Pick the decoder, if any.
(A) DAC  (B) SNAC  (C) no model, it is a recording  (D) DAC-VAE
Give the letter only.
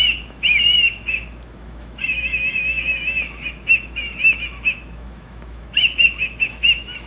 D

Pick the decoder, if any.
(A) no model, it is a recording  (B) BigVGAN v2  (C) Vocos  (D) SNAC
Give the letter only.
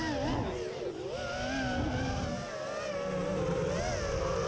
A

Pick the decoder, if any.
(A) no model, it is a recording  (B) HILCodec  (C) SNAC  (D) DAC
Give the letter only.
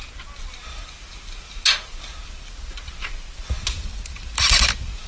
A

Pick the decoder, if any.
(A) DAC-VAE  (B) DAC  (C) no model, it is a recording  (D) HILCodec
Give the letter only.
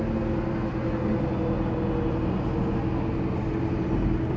C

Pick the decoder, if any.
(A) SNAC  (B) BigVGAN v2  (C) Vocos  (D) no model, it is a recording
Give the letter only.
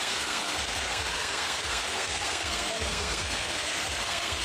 A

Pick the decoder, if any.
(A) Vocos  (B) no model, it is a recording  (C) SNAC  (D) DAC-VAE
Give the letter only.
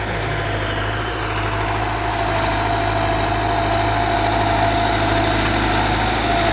B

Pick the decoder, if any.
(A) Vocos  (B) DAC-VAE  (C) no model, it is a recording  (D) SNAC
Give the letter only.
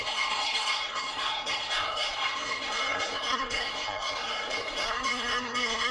D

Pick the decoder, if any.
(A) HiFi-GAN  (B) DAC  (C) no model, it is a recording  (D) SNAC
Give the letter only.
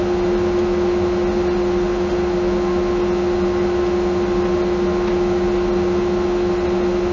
C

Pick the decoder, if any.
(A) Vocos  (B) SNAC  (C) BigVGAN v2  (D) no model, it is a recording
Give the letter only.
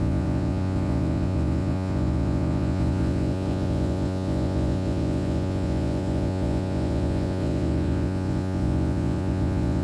A